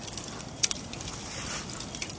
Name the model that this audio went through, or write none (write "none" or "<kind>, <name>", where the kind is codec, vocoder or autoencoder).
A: none